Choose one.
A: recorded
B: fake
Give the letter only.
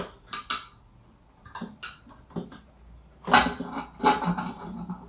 A